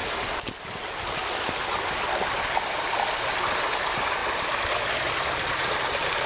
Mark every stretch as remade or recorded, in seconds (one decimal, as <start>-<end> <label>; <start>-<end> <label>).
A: 0.0-3.4 recorded; 3.4-4.2 remade; 4.2-5.4 recorded; 5.4-6.3 remade